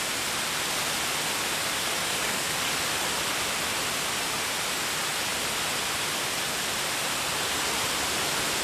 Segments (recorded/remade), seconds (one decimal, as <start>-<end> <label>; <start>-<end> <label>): 0.0-2.0 recorded; 2.0-2.8 remade; 2.8-8.6 recorded